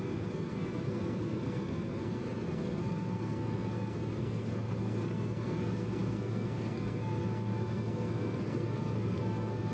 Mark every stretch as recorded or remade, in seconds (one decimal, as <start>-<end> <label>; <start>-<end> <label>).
0.0-9.7 remade